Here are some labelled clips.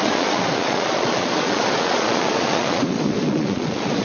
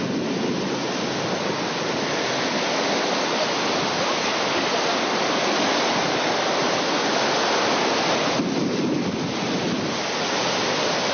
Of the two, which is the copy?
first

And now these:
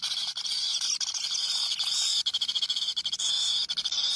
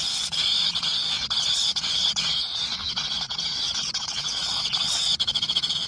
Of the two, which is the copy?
second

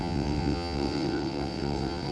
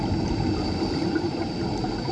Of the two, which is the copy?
first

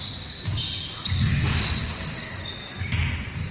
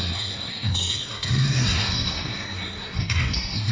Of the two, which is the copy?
second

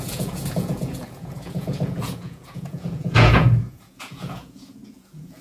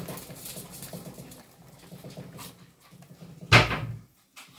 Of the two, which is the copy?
first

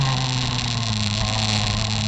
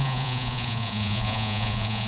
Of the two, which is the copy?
second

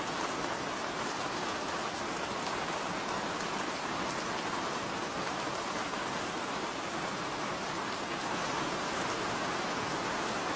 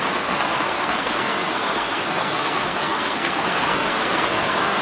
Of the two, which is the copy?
second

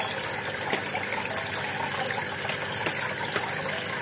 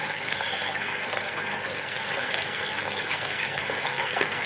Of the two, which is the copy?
second